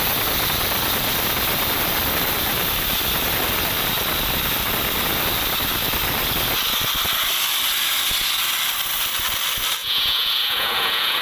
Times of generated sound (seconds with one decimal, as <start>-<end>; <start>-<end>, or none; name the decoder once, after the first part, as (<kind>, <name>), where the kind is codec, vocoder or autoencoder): 9.8-11.2 (vocoder, Vocos)